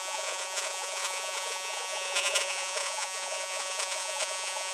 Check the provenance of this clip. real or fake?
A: fake